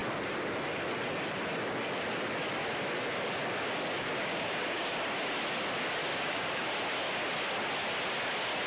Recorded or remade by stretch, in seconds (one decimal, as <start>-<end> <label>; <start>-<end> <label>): 0.0-4.2 recorded; 4.2-4.9 remade; 4.9-6.1 recorded; 6.1-6.7 remade; 6.7-8.7 recorded